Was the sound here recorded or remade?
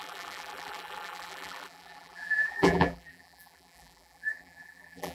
remade